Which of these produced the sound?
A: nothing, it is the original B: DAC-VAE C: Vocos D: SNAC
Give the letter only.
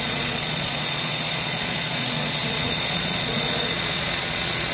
C